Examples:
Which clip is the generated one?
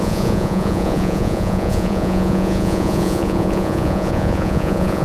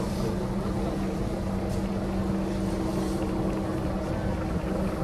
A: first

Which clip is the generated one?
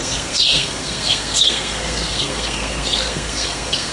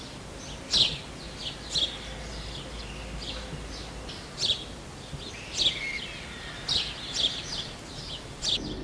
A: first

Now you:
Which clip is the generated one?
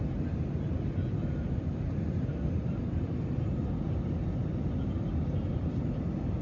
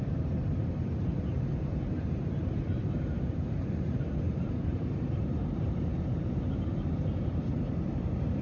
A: second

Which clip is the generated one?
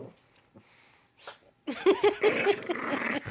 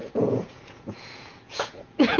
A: second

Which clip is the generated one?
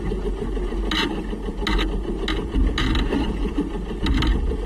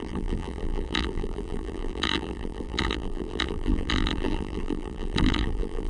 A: second